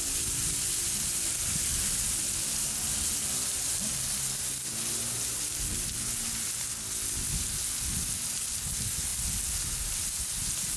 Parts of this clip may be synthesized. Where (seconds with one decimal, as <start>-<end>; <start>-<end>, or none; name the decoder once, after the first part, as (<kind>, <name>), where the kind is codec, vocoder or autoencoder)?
none